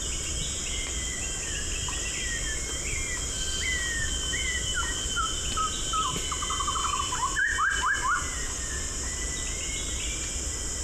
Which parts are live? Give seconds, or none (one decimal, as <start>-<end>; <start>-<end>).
0.0-10.8